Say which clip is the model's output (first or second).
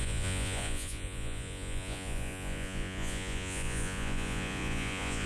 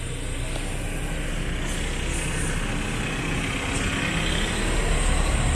first